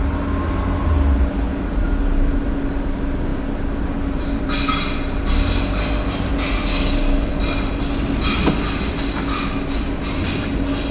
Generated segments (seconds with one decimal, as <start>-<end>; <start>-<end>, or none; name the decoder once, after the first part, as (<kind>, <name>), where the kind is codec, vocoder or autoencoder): 6.7-7.3 (codec, DAC)